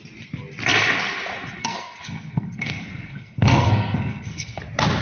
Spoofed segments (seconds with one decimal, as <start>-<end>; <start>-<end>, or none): 1.6-4.6